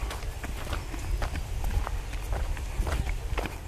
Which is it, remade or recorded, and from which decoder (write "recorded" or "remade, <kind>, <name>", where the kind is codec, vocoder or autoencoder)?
recorded